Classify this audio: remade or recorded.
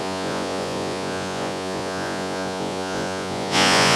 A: remade